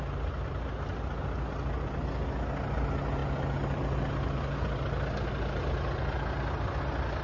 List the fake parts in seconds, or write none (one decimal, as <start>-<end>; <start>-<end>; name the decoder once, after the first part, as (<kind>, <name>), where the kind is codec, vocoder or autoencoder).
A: none